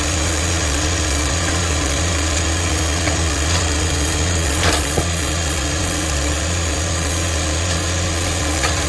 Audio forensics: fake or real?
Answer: fake